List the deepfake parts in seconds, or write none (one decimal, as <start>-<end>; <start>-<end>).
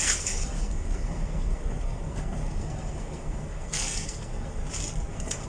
0.0-4.6; 5.1-5.5